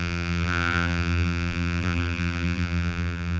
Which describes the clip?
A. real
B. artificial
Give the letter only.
B